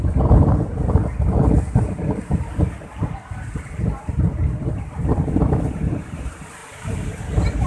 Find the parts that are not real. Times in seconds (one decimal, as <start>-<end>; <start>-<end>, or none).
0.0-0.7; 4.0-6.6; 7.2-7.7